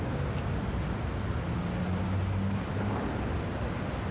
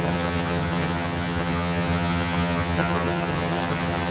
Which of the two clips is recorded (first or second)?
first